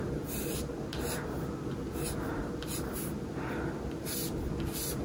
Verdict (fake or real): real